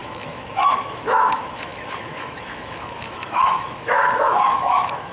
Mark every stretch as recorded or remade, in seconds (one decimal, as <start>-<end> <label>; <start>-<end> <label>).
0.0-5.1 remade